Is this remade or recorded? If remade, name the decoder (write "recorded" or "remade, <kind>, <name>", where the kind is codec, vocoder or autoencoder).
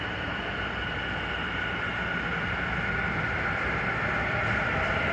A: recorded